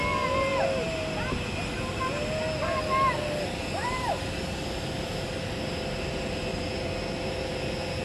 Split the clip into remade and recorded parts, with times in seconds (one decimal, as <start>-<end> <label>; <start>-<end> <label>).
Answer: 0.0-8.0 recorded